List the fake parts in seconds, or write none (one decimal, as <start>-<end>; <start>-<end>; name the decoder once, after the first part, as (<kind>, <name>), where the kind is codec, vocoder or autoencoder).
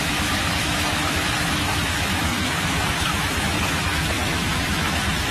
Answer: 0.0-5.3 (autoencoder, DAC-VAE)